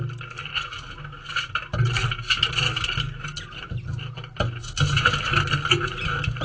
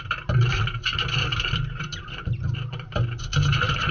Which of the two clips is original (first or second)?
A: first